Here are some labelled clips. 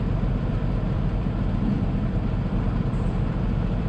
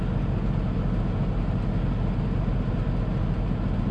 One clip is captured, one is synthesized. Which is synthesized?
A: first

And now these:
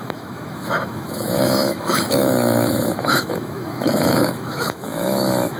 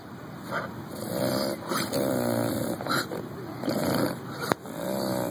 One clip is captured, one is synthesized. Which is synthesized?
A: first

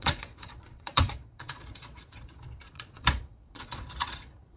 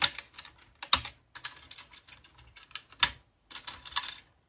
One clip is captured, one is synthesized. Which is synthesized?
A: first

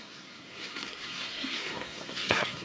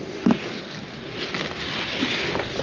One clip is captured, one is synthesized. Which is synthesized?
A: first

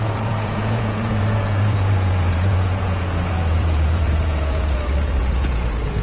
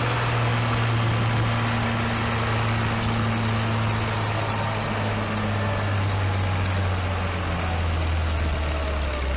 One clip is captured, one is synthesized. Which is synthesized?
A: first